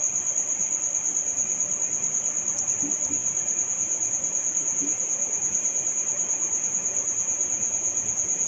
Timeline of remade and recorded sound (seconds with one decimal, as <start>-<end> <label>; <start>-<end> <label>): 0.0-3.2 recorded; 3.2-8.5 remade